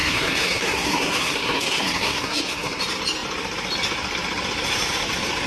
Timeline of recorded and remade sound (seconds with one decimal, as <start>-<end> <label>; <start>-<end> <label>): 0.0-2.8 remade; 2.8-5.5 recorded